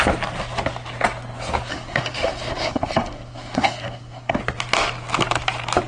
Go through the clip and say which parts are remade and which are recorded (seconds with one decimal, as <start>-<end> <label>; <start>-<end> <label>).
0.0-1.7 recorded; 1.7-4.4 remade; 4.4-5.9 recorded